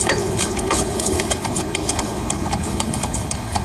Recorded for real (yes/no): no